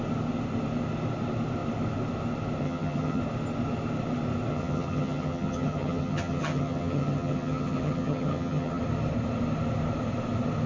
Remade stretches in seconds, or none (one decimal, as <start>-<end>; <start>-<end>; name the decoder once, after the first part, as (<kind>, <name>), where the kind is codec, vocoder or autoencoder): 2.6-3.2 (vocoder, HiFi-GAN); 4.5-8.8